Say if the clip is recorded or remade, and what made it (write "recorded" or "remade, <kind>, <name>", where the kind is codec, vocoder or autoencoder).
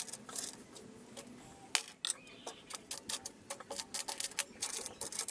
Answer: recorded